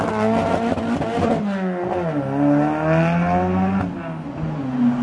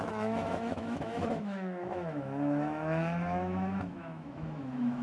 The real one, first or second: first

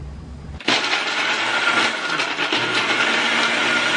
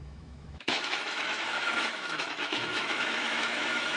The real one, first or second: first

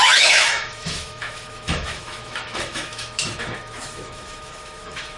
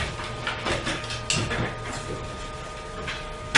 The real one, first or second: second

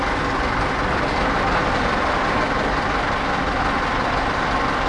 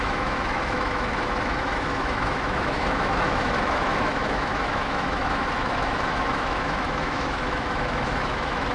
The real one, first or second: first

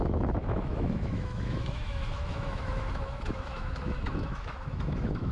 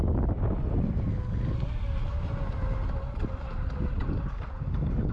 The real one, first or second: second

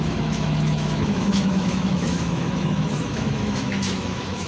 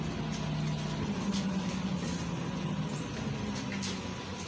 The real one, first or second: second